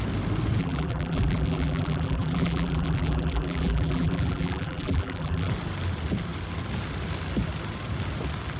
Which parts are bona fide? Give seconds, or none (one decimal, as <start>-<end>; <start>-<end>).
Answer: 0.0-0.6; 5.5-8.6